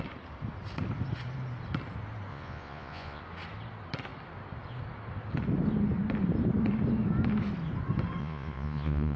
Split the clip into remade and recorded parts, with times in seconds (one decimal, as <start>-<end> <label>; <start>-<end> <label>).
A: 0.0-2.3 recorded; 2.3-3.2 remade; 3.2-8.2 recorded; 8.2-9.2 remade